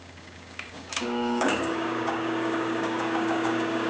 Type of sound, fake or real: fake